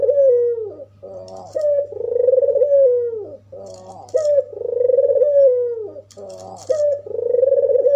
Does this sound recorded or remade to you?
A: recorded